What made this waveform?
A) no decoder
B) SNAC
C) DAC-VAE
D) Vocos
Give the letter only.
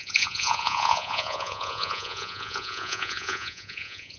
D